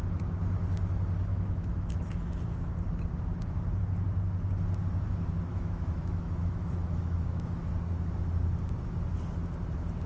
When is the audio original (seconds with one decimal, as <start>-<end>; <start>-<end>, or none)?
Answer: 0.0-1.3; 2.3-5.5; 7.7-10.1